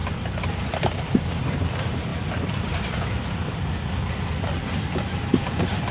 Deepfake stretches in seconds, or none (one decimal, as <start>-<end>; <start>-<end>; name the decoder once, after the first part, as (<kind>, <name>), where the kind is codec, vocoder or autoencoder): 0.0-1.1 (vocoder, BigVGAN v2); 2.1-5.9